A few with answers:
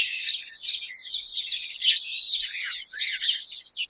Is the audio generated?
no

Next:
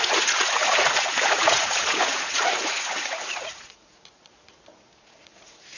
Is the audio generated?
yes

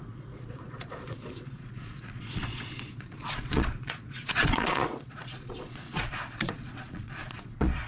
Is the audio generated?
yes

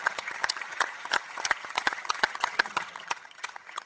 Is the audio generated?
yes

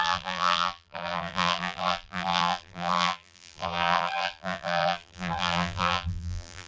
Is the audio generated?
yes